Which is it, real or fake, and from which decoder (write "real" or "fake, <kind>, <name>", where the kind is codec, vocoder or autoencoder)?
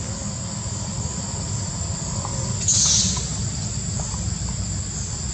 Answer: real